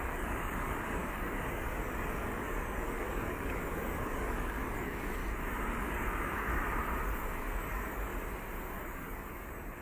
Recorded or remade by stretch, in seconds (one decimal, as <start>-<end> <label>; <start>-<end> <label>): 0.0-5.2 remade; 5.2-5.8 recorded; 5.8-6.5 remade; 6.5-7.0 recorded; 7.0-8.1 remade; 8.1-8.6 recorded; 8.6-9.8 remade